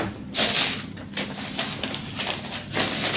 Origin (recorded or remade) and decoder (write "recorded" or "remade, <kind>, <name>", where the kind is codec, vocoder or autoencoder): recorded